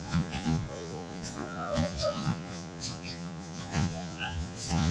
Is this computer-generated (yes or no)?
yes